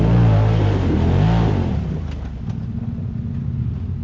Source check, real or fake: real